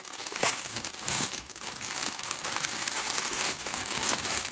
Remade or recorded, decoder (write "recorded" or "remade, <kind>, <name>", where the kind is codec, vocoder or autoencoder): remade, codec, DAC